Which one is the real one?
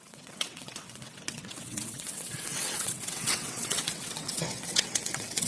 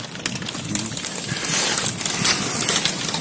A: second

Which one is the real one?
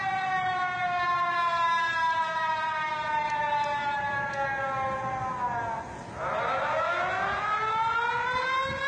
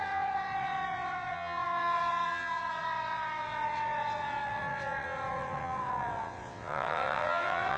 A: first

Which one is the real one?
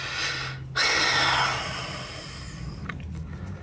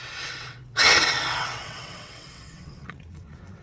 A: first